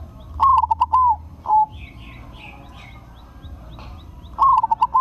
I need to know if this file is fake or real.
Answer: real